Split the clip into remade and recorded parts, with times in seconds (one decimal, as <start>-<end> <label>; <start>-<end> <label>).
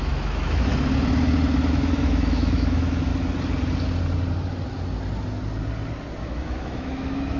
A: 0.0-0.7 remade; 0.7-1.7 recorded; 1.7-3.1 remade; 3.1-6.2 recorded; 6.2-7.4 remade